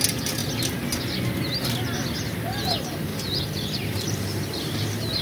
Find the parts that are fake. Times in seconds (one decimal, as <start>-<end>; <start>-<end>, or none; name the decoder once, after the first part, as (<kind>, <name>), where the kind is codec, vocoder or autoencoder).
3.1-5.2 (vocoder, BigVGAN v2)